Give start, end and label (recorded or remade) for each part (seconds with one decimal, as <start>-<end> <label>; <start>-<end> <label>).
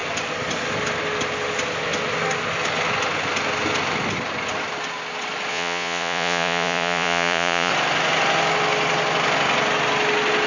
0.0-5.5 recorded; 5.5-7.7 remade; 7.7-10.5 recorded